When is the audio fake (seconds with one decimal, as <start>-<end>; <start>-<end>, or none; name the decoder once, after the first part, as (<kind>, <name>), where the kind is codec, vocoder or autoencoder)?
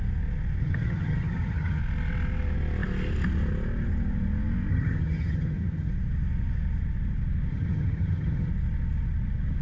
0.6-1.8 (vocoder, HiFi-GAN); 4.7-5.9; 7.5-8.5